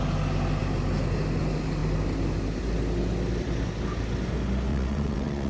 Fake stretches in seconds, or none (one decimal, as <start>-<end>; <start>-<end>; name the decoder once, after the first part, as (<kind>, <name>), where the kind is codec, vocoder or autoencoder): 4.7-5.5 (vocoder, WaveNeXt)